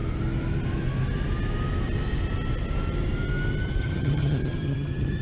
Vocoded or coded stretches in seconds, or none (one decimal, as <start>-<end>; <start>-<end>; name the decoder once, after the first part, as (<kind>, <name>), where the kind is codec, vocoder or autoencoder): 3.8-5.2 (vocoder, HiFi-GAN)